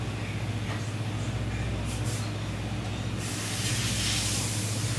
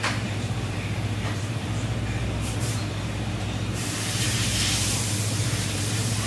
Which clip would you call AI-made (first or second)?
second